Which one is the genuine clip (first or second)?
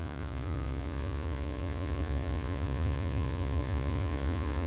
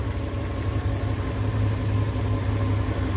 second